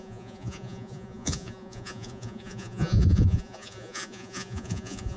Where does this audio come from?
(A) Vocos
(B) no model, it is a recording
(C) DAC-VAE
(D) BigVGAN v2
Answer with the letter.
A